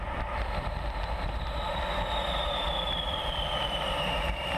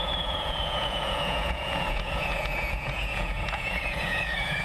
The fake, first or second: second